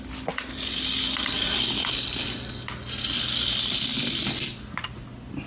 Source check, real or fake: real